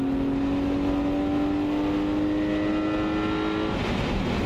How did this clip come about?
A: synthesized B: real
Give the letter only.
B